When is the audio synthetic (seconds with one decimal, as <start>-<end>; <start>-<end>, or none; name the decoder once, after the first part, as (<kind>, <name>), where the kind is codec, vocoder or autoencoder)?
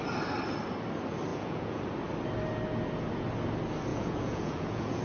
1.3-1.8 (vocoder, Vocos); 3.9-5.0